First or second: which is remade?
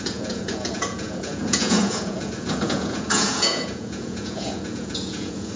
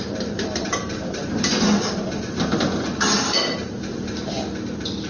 first